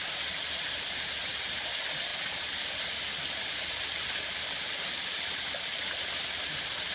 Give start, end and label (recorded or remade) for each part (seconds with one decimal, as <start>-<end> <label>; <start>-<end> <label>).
0.0-6.9 recorded

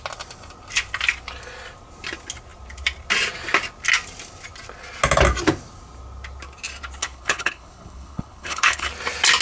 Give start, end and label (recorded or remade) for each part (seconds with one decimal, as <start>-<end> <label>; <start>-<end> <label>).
0.0-7.0 recorded; 7.0-8.9 remade; 8.9-9.4 recorded

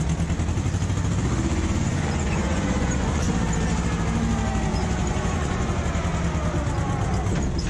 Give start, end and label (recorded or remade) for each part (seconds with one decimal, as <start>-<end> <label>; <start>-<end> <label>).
0.0-1.5 recorded; 1.5-3.3 remade; 3.3-4.7 recorded; 4.7-5.8 remade; 5.8-7.7 recorded

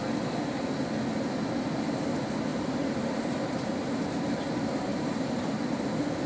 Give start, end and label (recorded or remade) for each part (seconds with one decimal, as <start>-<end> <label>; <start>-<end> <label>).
0.0-2.5 recorded; 2.5-3.9 remade; 3.9-4.9 recorded; 4.9-5.8 remade; 5.8-6.3 recorded

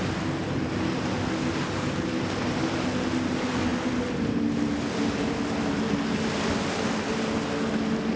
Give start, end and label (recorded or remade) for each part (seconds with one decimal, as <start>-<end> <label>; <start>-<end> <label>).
0.0-8.2 recorded

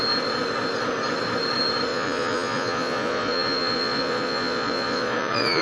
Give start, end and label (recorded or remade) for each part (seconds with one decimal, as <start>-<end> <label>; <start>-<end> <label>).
0.0-1.9 recorded; 1.9-5.6 remade

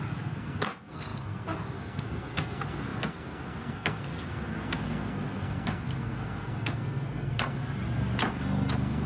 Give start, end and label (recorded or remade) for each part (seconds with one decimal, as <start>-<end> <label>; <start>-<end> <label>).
0.0-7.6 remade; 7.6-8.3 recorded; 8.3-9.1 remade